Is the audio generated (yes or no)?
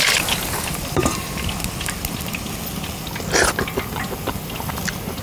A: no